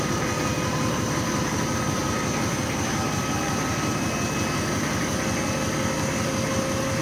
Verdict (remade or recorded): recorded